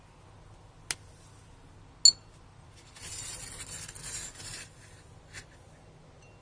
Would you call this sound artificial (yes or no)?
no